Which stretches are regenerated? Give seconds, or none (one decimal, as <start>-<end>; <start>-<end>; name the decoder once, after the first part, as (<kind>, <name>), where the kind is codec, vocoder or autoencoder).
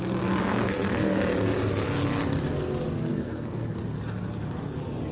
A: 0.4-1.2 (codec, SNAC); 3.1-3.7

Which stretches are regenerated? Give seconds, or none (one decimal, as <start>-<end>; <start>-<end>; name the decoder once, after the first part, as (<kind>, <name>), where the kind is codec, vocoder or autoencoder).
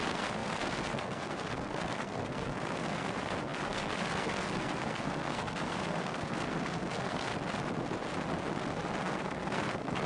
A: 0.0-7.3 (codec, SNAC); 9.0-10.1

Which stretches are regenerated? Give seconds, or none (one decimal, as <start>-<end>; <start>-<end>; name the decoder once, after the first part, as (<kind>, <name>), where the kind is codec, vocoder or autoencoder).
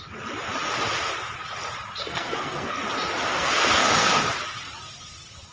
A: 2.0-2.8 (codec, SNAC); 3.3-4.2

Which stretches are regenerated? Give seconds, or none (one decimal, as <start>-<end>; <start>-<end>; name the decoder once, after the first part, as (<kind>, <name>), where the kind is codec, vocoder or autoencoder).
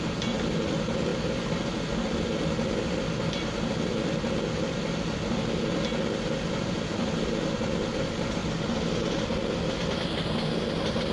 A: none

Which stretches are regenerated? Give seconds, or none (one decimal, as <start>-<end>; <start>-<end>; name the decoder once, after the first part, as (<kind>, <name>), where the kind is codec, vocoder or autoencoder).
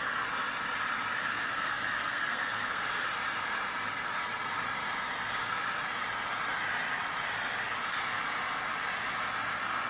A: 1.3-2.9 (codec, SNAC)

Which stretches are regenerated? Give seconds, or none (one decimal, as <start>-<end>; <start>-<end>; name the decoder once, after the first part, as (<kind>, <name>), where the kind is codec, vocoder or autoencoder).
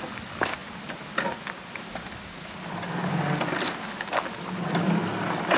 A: none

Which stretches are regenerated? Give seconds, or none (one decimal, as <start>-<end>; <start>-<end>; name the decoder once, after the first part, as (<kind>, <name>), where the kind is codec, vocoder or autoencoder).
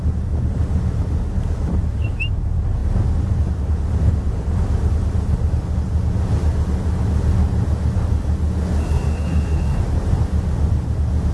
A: 8.8-9.8 (codec, SNAC)